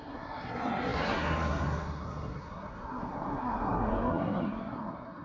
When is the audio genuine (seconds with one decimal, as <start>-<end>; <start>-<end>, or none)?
none